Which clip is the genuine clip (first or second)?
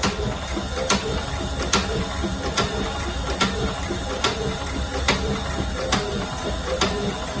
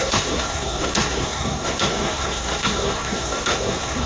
first